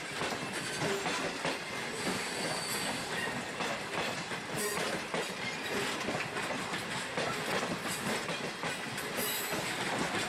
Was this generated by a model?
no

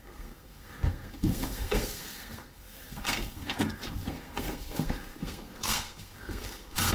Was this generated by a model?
yes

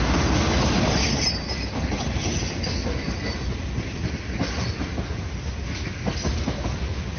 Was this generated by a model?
no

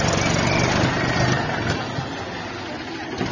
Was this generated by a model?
no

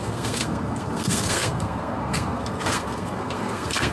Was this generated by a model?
yes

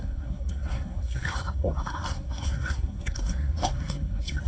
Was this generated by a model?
yes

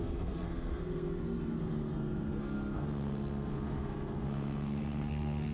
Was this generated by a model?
yes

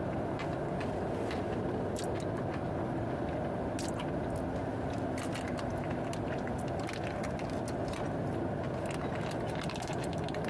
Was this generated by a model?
no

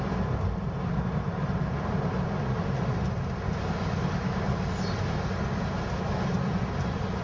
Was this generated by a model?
no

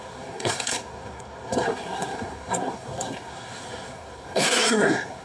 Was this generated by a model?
yes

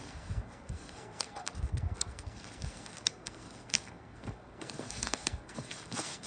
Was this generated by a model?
yes